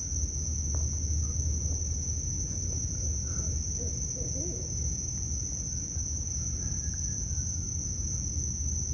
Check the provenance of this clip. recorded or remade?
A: recorded